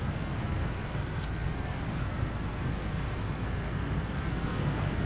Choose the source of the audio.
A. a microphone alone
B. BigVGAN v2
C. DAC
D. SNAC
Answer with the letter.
D